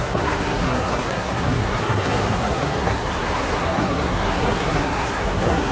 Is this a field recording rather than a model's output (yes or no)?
no